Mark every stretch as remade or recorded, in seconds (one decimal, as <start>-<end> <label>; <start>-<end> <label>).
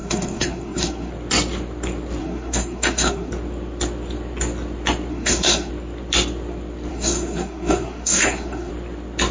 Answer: 0.0-1.1 remade; 1.1-2.2 recorded; 2.2-3.3 remade; 3.3-5.1 recorded; 5.1-5.7 remade; 5.7-6.9 recorded; 6.9-8.7 remade; 8.7-9.3 recorded